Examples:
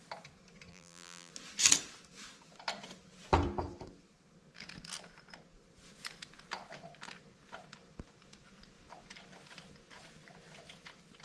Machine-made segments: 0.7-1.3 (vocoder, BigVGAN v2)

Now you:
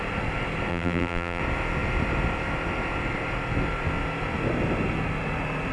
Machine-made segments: 0.7-1.4 (vocoder, BigVGAN v2)

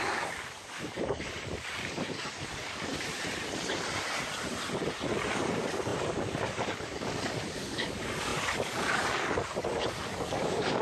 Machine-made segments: 0.0-2.9 (codec, DAC); 5.3-10.8

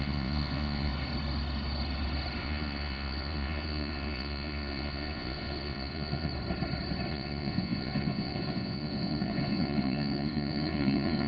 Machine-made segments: 0.0-0.9 (vocoder, Vocos); 2.4-6.3; 7.1-11.3